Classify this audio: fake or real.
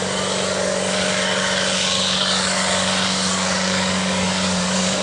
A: fake